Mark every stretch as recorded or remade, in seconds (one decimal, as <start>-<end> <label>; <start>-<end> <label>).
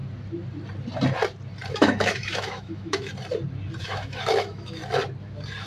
0.0-1.7 recorded; 1.7-3.1 remade; 3.1-3.8 recorded; 3.8-4.8 remade; 4.8-5.7 recorded